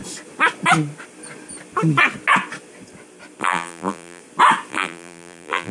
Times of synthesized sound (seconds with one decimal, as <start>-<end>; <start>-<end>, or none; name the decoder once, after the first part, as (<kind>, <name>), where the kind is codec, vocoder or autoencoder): 3.4-4.2 (vocoder, BigVGAN v2); 4.7-5.7